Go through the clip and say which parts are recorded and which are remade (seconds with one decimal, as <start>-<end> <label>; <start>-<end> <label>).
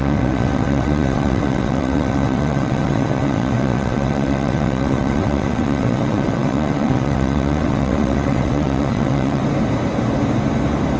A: 0.0-9.4 remade; 9.4-11.0 recorded